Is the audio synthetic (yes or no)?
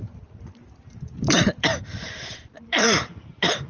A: yes